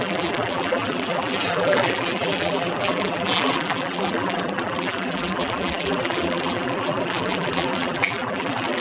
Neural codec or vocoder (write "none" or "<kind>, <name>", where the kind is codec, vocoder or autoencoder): vocoder, BigVGAN v2